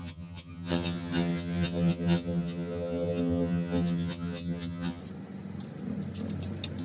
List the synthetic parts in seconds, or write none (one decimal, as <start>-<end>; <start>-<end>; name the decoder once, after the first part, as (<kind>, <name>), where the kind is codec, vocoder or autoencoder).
0.0-5.0 (vocoder, HiFi-GAN)